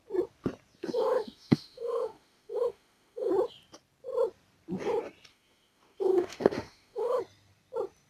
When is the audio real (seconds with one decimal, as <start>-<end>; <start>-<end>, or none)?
0.0-0.8; 3.3-5.3; 7.2-8.1

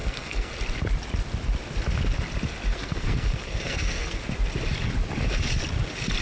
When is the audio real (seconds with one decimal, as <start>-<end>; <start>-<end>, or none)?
0.5-2.7; 4.2-6.2

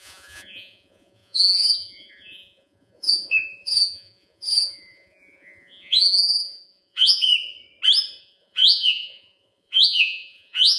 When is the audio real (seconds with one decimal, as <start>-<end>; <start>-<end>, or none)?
7.3-8.2

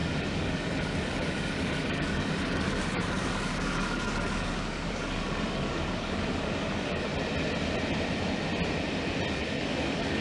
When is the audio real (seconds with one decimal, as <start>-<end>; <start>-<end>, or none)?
7.1-9.3

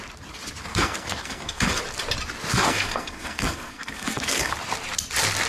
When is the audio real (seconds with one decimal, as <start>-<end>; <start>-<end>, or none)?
0.0-0.7; 1.8-2.5; 4.5-5.5

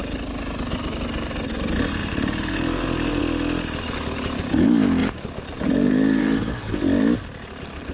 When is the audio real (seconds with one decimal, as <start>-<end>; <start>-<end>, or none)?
0.0-2.0; 3.2-5.0; 6.7-7.9